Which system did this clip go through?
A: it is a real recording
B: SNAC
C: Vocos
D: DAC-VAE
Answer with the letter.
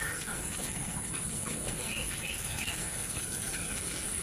B